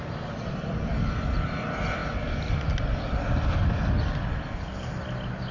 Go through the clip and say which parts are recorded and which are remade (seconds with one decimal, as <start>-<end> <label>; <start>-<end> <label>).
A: 0.0-5.5 recorded